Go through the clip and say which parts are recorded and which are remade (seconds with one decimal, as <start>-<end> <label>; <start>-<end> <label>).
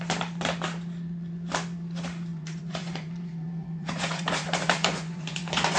0.0-2.3 recorded; 2.3-5.8 remade